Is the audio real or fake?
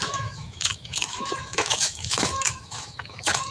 fake